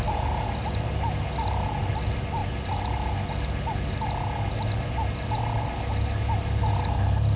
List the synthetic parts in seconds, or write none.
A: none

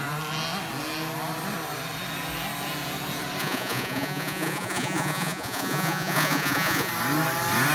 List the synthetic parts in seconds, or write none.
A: 3.4-6.9 (vocoder, Vocos)

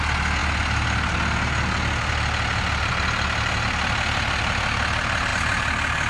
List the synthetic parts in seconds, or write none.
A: none

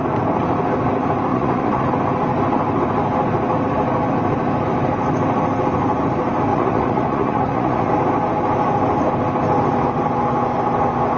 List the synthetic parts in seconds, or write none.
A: 1.3-1.9 (vocoder, Vocos); 6.5-7.9

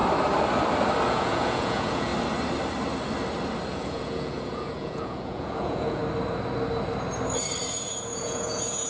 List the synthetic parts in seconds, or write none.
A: 1.1-2.1 (vocoder, Vocos); 3.7-6.0; 7.7-8.9